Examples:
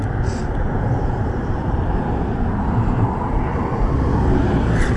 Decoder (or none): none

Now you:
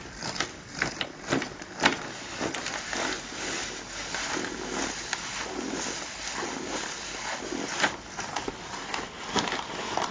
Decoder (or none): none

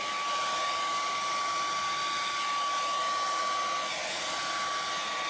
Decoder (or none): none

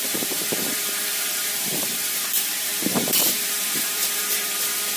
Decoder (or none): vocoder, BigVGAN v2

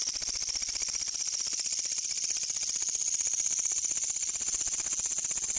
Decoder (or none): none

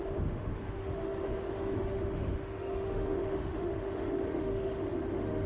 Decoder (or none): autoencoder, DAC-VAE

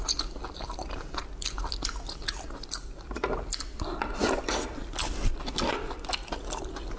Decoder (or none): none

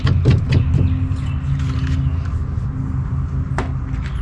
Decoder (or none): none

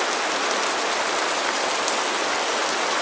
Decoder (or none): none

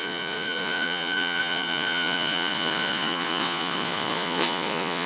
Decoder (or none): vocoder, Vocos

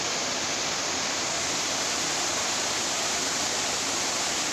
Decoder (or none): none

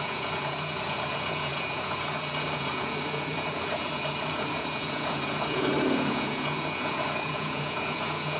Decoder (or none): vocoder, Vocos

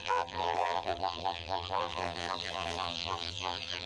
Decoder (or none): vocoder, BigVGAN v2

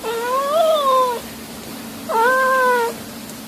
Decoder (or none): none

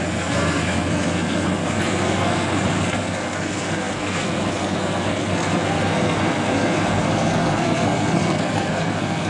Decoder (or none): codec, SNAC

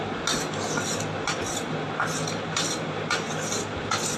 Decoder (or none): none